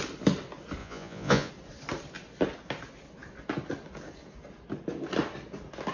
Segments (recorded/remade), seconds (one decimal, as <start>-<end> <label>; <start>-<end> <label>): 0.0-0.8 recorded; 0.8-1.5 remade; 1.5-5.9 recorded